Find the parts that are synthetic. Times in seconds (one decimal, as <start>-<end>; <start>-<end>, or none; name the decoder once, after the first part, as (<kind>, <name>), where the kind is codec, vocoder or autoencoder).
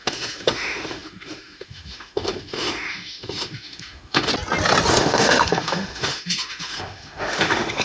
0.0-4.3 (autoencoder, DAC-VAE); 4.9-7.8